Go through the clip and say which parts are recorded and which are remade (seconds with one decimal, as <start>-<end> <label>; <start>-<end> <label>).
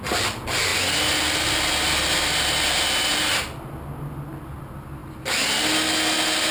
0.0-6.5 recorded